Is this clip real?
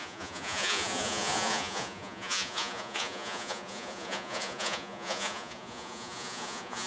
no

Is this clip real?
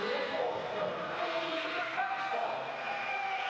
no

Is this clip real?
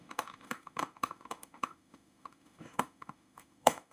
no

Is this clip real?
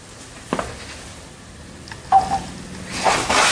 yes